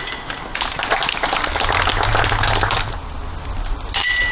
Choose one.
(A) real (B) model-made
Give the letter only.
A